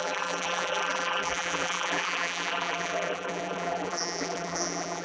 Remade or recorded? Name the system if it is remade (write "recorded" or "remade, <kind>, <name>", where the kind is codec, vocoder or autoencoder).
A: remade, vocoder, BigVGAN v2